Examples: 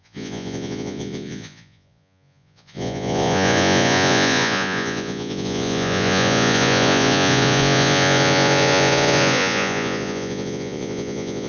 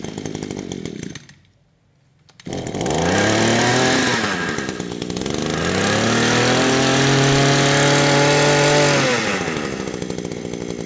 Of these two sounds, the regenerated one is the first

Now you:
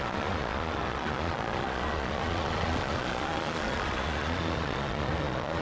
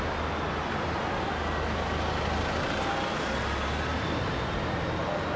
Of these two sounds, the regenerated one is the first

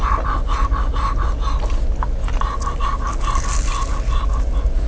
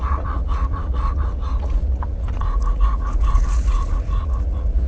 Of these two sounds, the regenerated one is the second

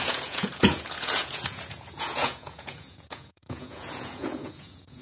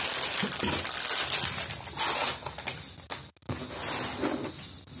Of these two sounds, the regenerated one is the first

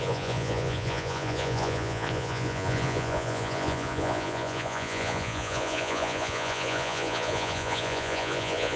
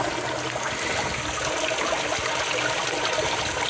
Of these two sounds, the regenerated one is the first